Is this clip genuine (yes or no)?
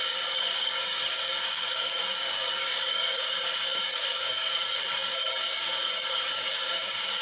no